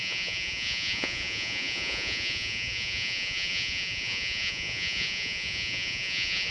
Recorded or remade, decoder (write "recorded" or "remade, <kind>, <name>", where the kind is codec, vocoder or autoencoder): remade, vocoder, Vocos